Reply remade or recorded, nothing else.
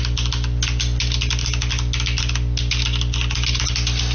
recorded